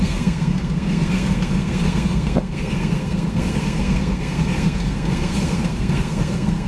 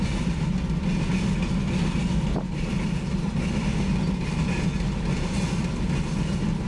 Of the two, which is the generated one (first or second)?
first